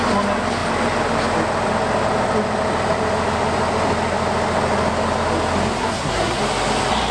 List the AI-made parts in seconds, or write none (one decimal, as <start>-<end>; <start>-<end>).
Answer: 5.8-6.4